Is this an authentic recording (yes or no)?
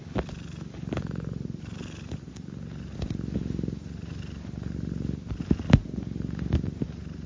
yes